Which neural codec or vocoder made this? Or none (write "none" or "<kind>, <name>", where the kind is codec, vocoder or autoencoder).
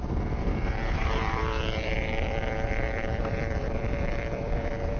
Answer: vocoder, BigVGAN v2